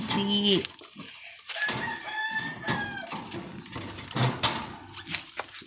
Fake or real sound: real